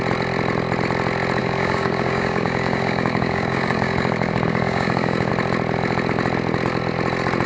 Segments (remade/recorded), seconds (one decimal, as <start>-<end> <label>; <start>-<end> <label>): 0.0-1.4 recorded; 1.4-5.3 remade; 5.3-7.5 recorded

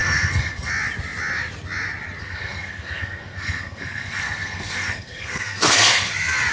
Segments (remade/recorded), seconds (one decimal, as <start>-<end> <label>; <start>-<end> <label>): 0.0-0.7 remade; 0.7-2.2 recorded; 2.2-6.1 remade; 6.1-6.5 recorded

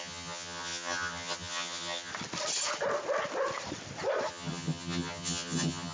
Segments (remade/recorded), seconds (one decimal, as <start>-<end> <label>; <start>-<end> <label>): 0.0-2.1 remade; 2.1-4.3 recorded; 4.3-5.9 remade